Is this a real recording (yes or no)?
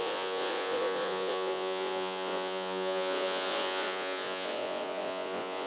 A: no